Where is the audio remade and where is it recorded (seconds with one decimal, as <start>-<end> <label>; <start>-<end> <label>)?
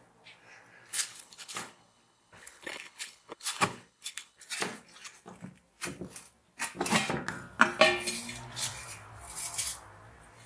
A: 0.0-0.9 recorded; 0.9-4.4 remade; 4.4-10.5 recorded